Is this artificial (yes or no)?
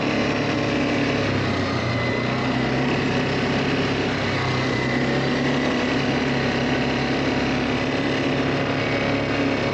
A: no